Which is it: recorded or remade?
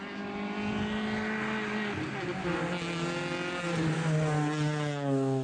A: recorded